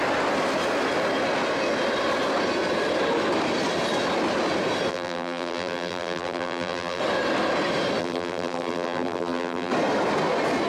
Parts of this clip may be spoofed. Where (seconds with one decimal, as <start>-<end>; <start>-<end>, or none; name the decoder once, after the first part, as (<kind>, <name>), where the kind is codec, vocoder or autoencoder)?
4.9-7.0 (vocoder, BigVGAN v2); 8.0-9.7